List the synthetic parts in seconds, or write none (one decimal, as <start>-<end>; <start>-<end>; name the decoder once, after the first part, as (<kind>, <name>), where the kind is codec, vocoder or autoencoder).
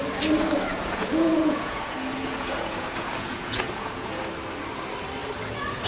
0.7-4.2 (vocoder, Vocos)